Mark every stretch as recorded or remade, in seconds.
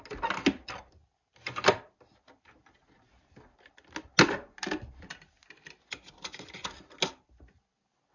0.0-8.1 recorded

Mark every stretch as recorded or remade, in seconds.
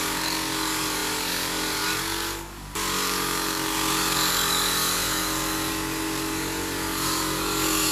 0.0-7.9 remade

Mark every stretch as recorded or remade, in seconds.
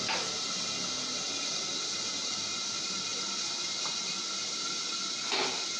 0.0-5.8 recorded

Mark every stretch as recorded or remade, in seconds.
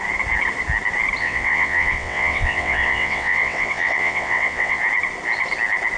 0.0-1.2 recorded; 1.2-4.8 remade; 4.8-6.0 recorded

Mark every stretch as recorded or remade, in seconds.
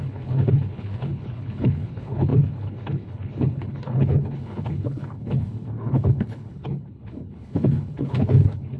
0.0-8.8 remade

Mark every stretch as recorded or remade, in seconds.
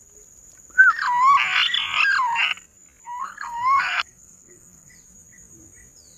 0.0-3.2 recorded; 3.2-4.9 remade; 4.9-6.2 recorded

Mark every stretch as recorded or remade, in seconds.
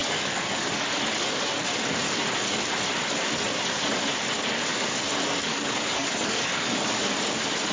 0.0-0.9 remade; 0.9-4.7 recorded; 4.7-7.0 remade; 7.0-7.7 recorded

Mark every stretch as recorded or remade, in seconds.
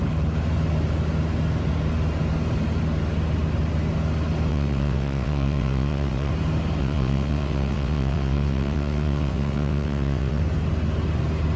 0.0-4.5 recorded; 4.5-6.3 remade; 6.3-6.8 recorded; 6.8-10.4 remade; 10.4-11.6 recorded